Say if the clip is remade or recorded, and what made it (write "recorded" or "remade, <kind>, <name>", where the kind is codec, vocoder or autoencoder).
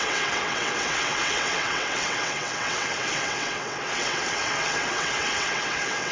remade, vocoder, WaveNeXt